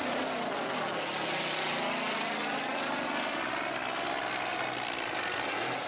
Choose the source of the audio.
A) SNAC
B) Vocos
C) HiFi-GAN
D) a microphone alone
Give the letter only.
D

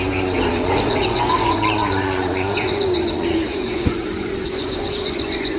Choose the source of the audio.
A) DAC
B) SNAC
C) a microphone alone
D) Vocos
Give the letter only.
D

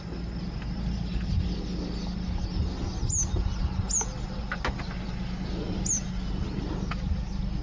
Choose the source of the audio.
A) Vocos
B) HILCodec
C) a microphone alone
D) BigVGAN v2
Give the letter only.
C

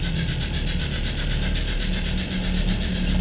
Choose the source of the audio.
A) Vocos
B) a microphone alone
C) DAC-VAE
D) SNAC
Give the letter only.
B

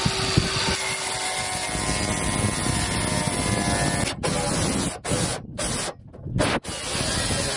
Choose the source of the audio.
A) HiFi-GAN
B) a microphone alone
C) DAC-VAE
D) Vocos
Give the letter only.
B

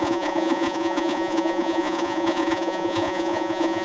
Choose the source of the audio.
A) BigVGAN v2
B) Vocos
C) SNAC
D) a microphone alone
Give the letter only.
B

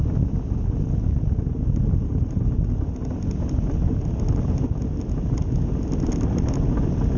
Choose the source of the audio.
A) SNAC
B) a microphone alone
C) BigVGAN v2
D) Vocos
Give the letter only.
B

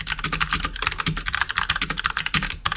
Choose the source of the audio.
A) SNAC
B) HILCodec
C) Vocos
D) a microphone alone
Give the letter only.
D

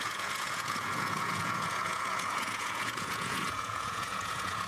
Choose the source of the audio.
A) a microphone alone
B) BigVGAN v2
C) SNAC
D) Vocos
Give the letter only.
D